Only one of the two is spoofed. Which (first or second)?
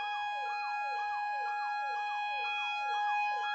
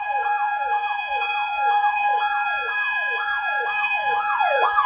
second